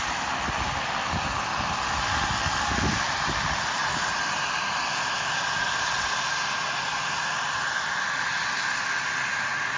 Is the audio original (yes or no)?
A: yes